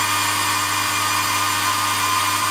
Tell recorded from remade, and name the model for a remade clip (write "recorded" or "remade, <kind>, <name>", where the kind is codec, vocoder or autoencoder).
recorded